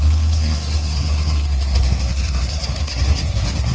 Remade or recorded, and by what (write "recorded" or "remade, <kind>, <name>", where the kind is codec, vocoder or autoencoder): remade, codec, SNAC